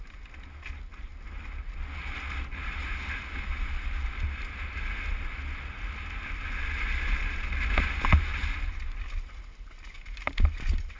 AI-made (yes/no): no